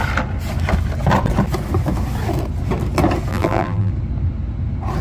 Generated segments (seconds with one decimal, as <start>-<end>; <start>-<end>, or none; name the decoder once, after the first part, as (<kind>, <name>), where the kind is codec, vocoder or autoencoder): 3.3-3.9 (vocoder, BigVGAN v2)